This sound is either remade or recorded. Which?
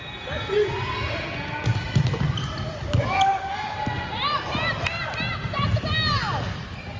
recorded